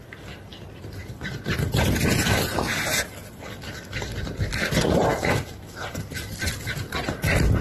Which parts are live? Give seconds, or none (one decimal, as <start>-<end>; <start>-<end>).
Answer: 0.0-7.6